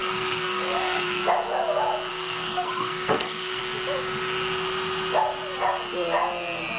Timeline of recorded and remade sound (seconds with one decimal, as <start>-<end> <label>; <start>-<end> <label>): 0.0-1.2 remade; 1.2-2.1 recorded; 2.1-3.6 remade; 3.6-6.8 recorded